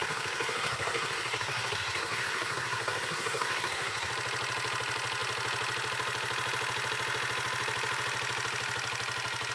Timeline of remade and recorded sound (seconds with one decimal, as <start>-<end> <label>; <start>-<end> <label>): 0.0-4.1 remade; 4.1-9.5 recorded